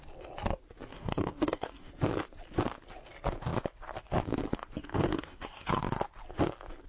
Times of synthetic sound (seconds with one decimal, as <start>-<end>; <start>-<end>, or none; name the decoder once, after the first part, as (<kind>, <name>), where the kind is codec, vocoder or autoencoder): 0.9-1.9 (codec, DAC); 4.8-5.7